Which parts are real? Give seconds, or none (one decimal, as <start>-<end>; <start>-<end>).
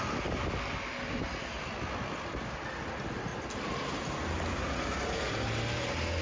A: 0.0-6.2